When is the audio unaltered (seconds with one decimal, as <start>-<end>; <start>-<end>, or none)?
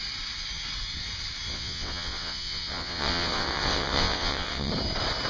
0.0-1.5; 4.7-5.3